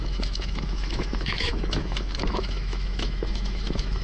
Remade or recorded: remade